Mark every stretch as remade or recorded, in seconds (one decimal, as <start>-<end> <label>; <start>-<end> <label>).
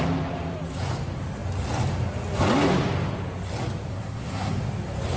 0.0-3.9 recorded; 3.9-4.6 remade; 4.6-5.2 recorded